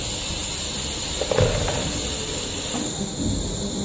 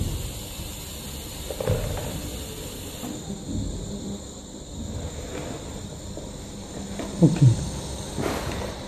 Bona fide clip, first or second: first